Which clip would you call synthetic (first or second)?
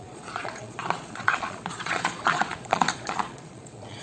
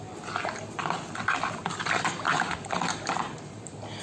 first